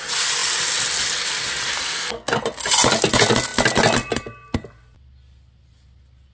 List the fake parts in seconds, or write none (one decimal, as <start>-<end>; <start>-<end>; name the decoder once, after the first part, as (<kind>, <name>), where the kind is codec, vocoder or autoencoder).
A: 1.7-2.4 (codec, SNAC)